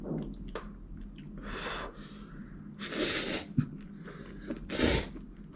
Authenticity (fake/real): real